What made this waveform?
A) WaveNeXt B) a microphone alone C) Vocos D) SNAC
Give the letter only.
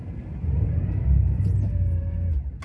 B